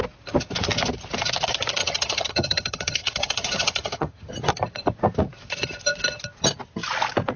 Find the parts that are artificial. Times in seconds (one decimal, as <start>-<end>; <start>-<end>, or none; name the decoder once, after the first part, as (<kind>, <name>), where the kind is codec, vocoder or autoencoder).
1.8-4.3 (vocoder, HiFi-GAN)